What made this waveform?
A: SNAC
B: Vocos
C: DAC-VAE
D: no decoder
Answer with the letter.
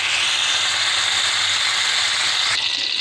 D